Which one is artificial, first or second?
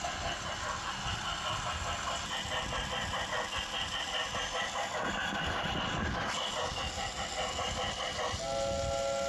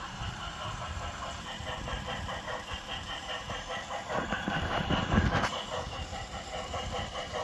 second